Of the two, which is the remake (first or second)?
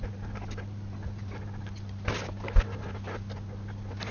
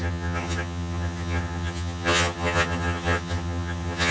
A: second